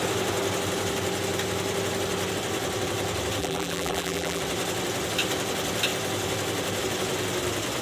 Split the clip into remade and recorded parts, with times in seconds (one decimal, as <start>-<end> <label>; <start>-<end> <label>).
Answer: 0.0-3.4 recorded; 3.4-4.4 remade; 4.4-7.8 recorded

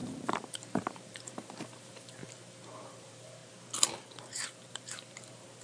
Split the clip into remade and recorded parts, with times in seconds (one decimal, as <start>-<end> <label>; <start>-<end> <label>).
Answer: 0.0-2.2 remade; 2.2-2.9 recorded; 2.9-3.4 remade; 3.4-4.2 recorded; 4.2-5.6 remade

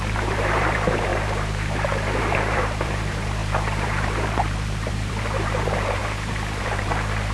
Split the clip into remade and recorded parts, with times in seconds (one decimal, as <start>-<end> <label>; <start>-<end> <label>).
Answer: 0.0-6.0 remade; 6.0-6.6 recorded; 6.6-7.3 remade

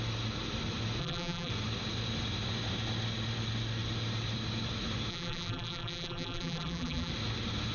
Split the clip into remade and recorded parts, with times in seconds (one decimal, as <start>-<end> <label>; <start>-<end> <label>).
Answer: 0.0-1.0 recorded; 1.0-1.5 remade; 1.5-5.1 recorded; 5.1-7.1 remade; 7.1-7.7 recorded